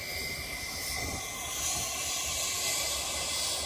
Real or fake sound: real